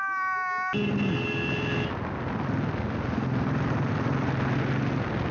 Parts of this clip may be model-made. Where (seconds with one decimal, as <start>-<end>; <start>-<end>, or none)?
none